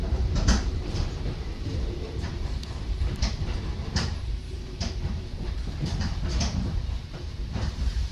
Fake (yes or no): yes